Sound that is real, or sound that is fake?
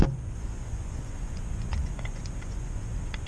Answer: fake